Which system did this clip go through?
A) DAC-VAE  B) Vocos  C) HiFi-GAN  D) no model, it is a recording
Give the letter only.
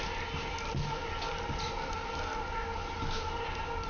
D